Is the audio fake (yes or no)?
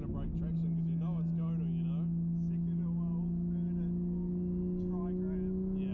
no